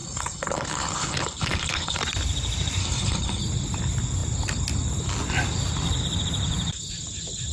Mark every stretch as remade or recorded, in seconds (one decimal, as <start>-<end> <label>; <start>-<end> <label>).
0.0-2.0 remade; 2.0-2.8 recorded; 2.8-3.4 remade; 3.4-7.5 recorded